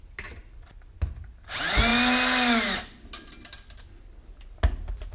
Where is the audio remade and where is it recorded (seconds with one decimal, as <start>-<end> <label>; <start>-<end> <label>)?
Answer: 0.0-5.1 recorded